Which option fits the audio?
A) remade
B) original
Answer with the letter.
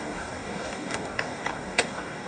A